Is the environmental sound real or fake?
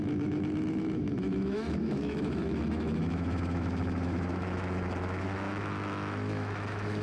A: fake